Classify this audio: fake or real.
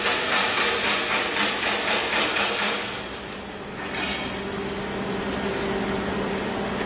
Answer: real